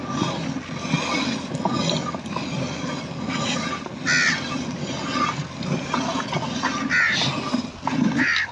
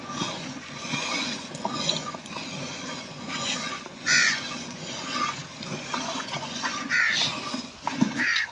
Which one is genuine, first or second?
first